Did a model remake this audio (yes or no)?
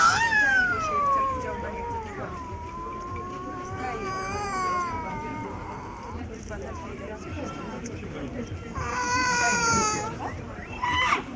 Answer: yes